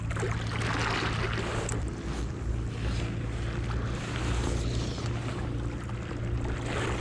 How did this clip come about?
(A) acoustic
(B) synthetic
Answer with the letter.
A